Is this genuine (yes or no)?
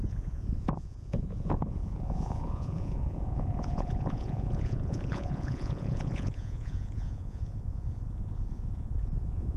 no